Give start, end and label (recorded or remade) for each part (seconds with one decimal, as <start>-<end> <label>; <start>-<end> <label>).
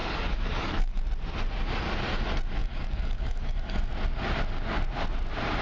0.0-1.0 remade; 1.0-2.6 recorded; 2.6-3.9 remade; 3.9-5.6 recorded